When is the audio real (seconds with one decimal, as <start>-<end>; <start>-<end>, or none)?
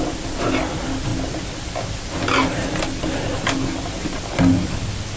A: 0.0-5.2